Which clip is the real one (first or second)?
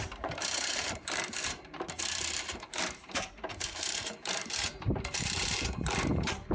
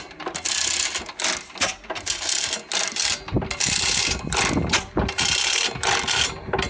second